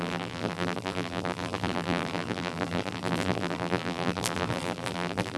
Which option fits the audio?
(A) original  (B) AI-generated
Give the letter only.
B